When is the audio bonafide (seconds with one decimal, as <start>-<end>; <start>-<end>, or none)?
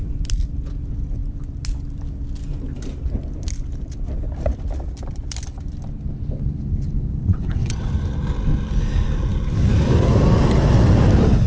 0.0-7.2; 7.9-11.5